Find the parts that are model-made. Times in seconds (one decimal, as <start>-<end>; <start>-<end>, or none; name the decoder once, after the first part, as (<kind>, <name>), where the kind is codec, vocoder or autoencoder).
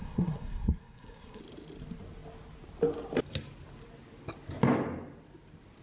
0.0-1.4 (codec, SNAC)